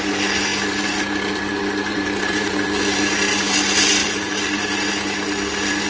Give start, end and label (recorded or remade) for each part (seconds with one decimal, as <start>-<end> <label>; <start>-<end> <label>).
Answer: 0.0-1.9 recorded; 1.9-2.8 remade; 2.8-4.0 recorded; 4.0-4.7 remade; 4.7-5.9 recorded